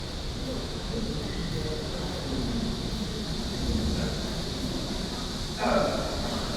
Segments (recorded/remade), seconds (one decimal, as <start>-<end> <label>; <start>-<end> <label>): 0.0-0.4 recorded; 0.4-1.0 remade; 1.0-6.6 recorded